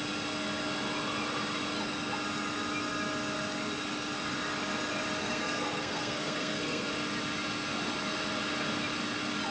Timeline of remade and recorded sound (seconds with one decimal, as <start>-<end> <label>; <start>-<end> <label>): 0.0-5.2 recorded; 5.2-6.9 remade; 6.9-9.5 recorded